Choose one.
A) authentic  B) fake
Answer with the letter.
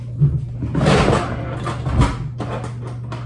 A